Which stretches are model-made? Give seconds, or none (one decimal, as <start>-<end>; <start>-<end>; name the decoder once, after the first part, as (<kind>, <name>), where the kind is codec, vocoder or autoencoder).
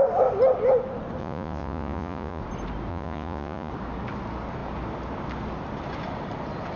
1.2-2.4 (vocoder, Vocos); 2.9-3.7